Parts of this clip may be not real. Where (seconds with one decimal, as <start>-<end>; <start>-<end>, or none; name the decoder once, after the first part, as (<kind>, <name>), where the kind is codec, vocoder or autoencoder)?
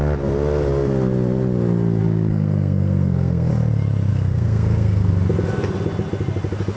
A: 2.0-3.5 (codec, SNAC); 4.1-5.1